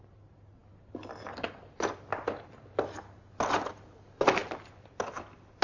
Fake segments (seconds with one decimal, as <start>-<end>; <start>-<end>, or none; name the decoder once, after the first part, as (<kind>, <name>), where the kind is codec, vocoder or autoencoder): none